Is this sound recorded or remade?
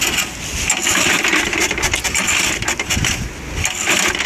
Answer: recorded